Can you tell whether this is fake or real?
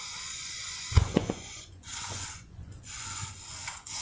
fake